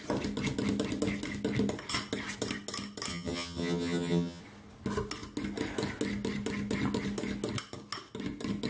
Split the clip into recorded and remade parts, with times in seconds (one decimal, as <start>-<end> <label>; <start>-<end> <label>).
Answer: 0.0-3.1 recorded; 3.1-4.4 remade; 4.4-8.7 recorded